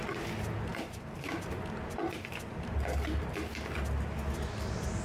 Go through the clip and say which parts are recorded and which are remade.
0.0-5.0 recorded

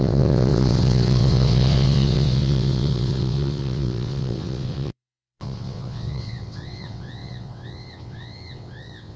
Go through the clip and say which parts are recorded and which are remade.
0.0-9.2 remade

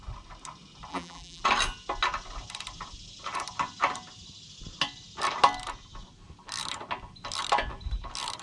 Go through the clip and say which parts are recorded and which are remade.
0.0-0.9 recorded; 0.9-1.4 remade; 1.4-8.4 recorded

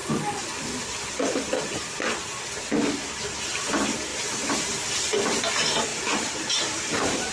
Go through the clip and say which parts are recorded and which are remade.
0.0-5.9 recorded; 5.9-7.3 remade

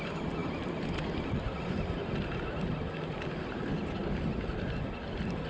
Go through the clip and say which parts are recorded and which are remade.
0.0-5.5 recorded

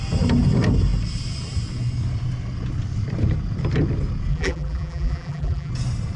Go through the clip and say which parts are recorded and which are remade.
0.0-4.3 recorded; 4.3-5.7 remade; 5.7-6.2 recorded

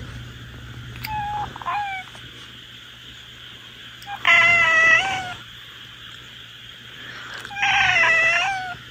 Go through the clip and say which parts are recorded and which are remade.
0.0-4.5 recorded; 4.5-7.3 remade; 7.3-8.9 recorded